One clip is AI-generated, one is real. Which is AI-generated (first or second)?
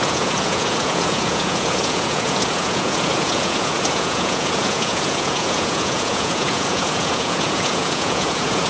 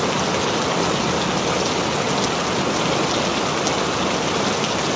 first